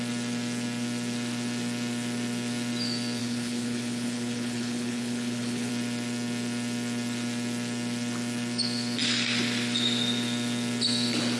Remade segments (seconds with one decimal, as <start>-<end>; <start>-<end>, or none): 3.2-5.7

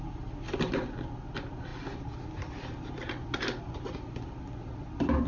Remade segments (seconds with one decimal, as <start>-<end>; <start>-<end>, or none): none

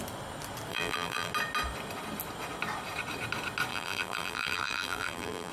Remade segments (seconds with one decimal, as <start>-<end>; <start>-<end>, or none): 0.7-1.3; 3.7-5.5

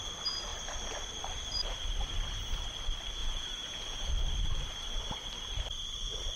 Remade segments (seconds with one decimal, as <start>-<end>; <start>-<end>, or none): 3.2-4.1

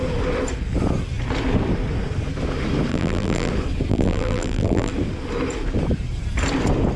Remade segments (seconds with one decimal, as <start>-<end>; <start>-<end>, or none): 2.9-3.5; 3.9-4.9

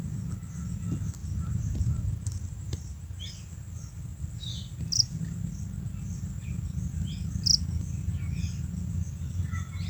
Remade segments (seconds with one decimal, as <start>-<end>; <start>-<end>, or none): 1.2-3.3

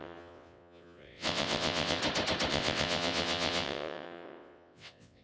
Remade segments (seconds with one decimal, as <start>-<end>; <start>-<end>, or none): 0.0-2.0; 2.5-5.2